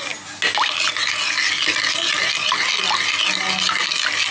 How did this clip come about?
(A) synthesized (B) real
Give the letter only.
B